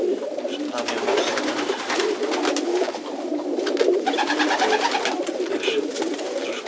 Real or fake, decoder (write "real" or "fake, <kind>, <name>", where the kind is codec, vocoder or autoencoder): real